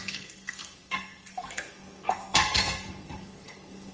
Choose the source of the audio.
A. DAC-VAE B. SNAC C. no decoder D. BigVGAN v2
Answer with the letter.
B